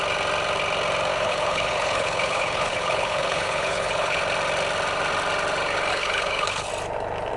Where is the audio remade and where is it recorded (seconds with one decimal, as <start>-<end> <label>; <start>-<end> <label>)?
0.0-1.1 recorded; 1.1-4.2 remade; 4.2-5.9 recorded; 5.9-6.7 remade; 6.7-7.4 recorded